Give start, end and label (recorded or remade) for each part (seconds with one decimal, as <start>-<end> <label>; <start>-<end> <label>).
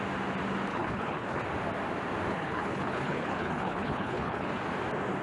0.0-0.7 recorded; 0.7-1.4 remade; 1.4-2.3 recorded; 2.3-4.6 remade; 4.6-5.2 recorded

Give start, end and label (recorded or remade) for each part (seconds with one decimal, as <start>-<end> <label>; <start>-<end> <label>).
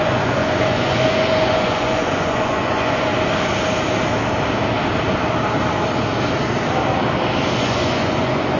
0.0-3.1 remade; 3.1-7.6 recorded; 7.6-8.6 remade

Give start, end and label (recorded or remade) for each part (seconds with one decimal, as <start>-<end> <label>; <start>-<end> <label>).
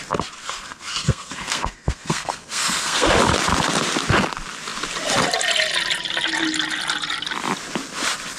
0.0-0.4 recorded; 0.4-3.1 remade; 3.1-8.4 recorded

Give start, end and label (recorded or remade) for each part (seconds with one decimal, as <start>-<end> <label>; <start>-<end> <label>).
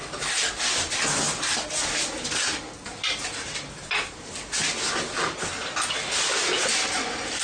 0.0-7.4 recorded